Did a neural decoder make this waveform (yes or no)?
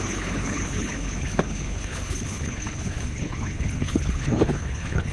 yes